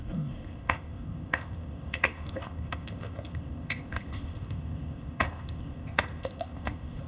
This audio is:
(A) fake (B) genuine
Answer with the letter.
A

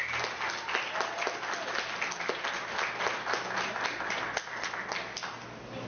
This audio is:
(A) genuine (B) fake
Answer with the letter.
A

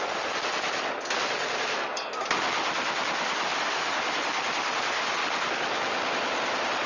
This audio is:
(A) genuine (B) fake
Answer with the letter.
A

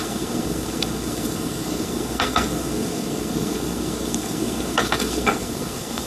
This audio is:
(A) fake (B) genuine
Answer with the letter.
A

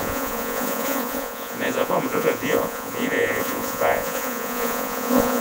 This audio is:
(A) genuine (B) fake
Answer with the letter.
B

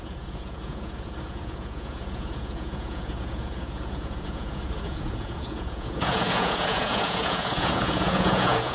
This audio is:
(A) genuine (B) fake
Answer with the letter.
B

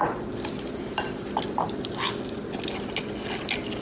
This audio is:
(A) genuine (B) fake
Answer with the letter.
A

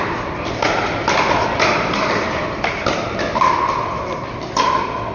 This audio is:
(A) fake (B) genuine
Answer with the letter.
B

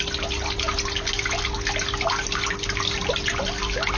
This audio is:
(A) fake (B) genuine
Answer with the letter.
B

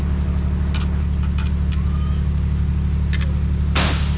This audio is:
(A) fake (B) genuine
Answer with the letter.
B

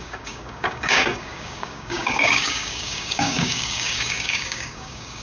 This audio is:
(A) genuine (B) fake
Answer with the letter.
B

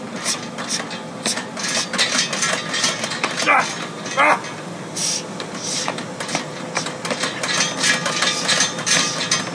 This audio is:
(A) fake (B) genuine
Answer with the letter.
B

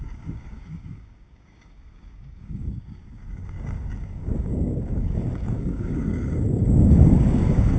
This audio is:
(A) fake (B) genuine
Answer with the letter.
A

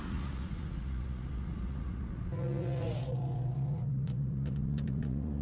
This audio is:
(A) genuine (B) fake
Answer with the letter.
B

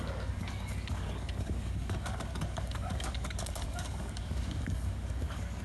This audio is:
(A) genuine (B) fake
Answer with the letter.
B